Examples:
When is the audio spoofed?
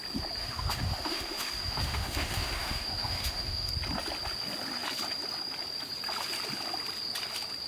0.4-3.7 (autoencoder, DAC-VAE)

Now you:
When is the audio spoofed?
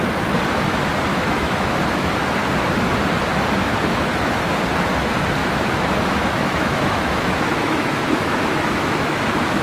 1.1-2.1 (autoencoder, DAC-VAE); 3.7-4.5; 5.4-9.6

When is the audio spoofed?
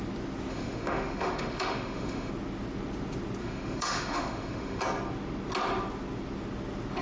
0.5-2.3 (autoencoder, DAC-VAE); 3.4-4.8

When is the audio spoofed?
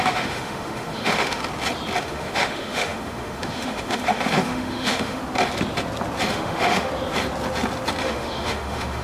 0.0-1.4 (autoencoder, DAC-VAE); 2.0-5.2; 6.3-6.9; 8.0-9.0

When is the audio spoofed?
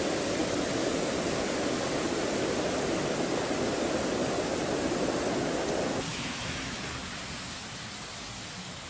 6.1-6.8 (autoencoder, DAC-VAE)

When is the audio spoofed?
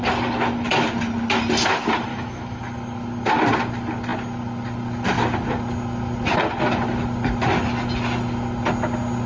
2.1-2.6 (autoencoder, DAC-VAE)